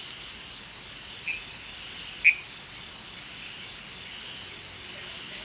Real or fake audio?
real